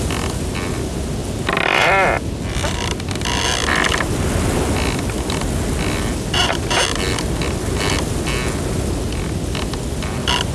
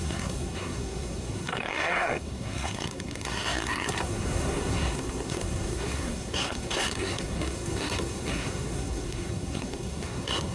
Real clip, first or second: first